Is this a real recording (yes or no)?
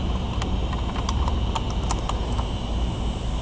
yes